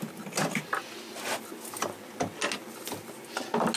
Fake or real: real